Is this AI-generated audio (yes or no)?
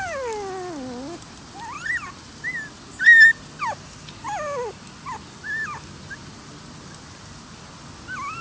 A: no